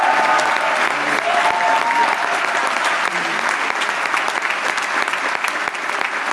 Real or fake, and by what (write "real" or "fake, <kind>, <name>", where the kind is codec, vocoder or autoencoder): real